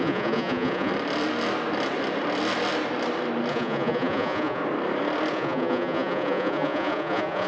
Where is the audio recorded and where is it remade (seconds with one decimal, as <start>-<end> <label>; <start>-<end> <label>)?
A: 0.0-0.9 remade; 0.9-3.5 recorded; 3.5-4.6 remade; 4.6-5.3 recorded; 5.3-7.5 remade